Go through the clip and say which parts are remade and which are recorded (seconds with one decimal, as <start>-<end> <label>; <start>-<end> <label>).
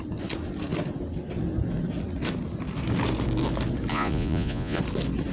0.0-3.9 recorded; 3.9-4.8 remade; 4.8-5.3 recorded